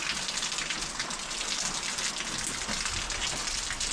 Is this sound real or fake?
real